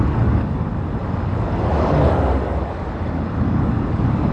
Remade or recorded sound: remade